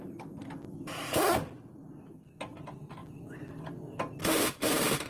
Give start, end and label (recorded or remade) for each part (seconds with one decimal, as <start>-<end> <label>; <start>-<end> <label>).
0.0-4.2 recorded; 4.2-5.1 remade